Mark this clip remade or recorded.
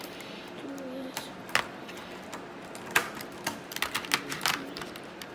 recorded